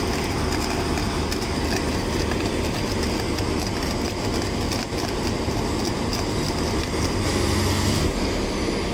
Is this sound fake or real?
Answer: real